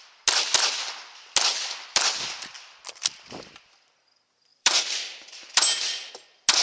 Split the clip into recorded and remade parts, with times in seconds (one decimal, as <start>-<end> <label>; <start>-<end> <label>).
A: 0.0-1.5 recorded; 1.5-2.5 remade; 2.5-4.5 recorded; 4.5-6.1 remade; 6.1-6.6 recorded